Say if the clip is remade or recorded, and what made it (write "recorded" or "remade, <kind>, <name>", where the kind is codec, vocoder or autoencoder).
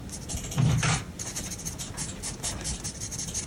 recorded